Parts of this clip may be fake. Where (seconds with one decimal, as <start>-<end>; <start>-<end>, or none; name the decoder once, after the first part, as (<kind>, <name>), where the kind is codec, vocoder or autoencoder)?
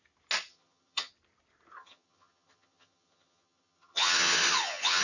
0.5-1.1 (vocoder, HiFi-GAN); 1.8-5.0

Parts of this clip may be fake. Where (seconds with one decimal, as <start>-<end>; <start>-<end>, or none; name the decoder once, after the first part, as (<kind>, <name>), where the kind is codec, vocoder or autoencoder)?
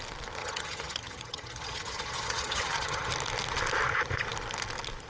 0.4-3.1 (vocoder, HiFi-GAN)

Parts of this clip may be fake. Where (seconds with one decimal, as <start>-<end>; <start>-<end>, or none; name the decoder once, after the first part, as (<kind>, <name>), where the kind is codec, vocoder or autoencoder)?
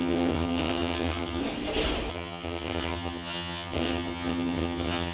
0.0-1.4 (vocoder, HiFi-GAN); 2.1-5.1